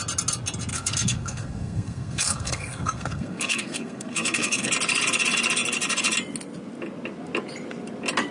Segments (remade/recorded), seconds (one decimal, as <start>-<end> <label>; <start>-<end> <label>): 0.0-0.7 recorded; 0.7-4.7 remade; 4.7-8.3 recorded